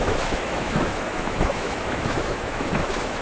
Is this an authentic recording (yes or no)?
no